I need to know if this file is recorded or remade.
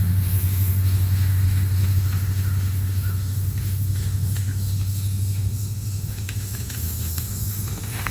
remade